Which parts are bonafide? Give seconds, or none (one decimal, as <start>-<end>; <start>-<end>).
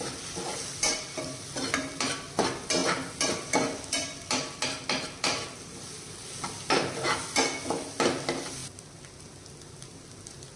0.0-10.6